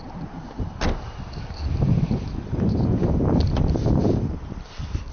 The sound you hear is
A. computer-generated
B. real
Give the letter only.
B